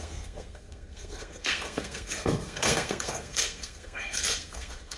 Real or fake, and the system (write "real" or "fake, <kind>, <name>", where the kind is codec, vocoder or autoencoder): fake, codec, SNAC